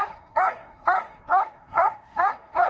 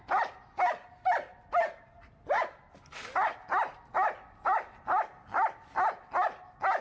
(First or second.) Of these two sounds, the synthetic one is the first